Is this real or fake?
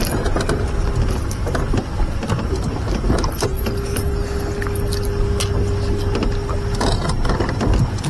real